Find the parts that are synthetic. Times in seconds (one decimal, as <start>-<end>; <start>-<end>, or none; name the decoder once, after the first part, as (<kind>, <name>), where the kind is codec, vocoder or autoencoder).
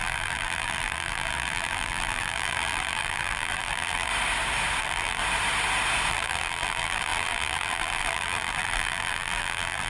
0.0-4.1 (vocoder, BigVGAN v2); 4.8-5.2; 6.1-9.9